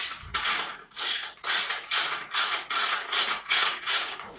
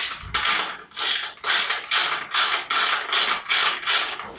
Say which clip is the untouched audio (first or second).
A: second